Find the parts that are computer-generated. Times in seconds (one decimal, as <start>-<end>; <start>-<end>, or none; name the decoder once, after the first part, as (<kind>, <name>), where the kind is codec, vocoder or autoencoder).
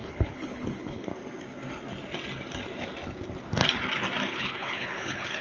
0.0-1.1 (codec, HILCodec); 4.3-5.4